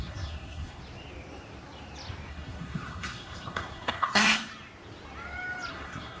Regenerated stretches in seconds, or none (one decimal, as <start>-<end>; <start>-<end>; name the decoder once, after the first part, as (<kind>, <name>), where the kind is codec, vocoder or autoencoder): 0.0-0.8 (codec, SNAC); 2.3-4.5; 5.7-6.2